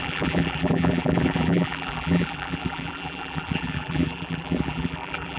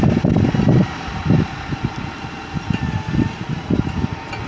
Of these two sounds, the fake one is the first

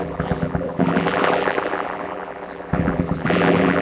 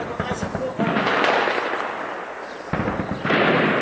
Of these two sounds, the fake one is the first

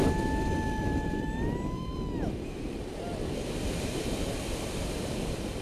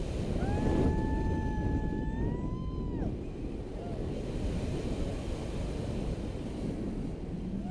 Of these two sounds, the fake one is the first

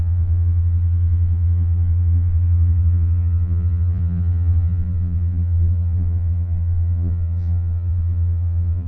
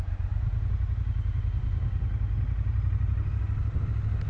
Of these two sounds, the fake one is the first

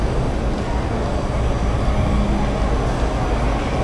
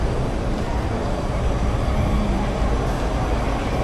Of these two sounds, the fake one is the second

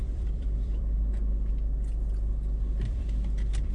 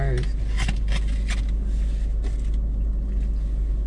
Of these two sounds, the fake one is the first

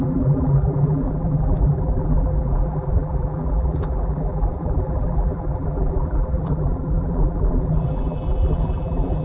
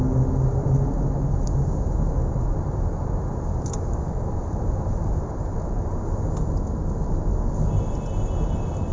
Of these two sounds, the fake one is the first